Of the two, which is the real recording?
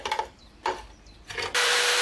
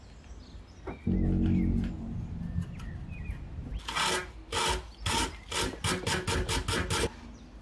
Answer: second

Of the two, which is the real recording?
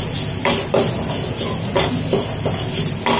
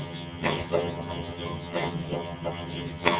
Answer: first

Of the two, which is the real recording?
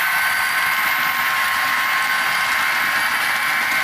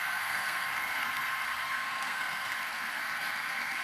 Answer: first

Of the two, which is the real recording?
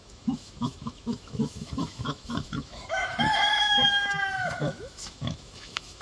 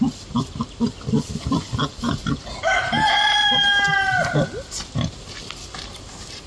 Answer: second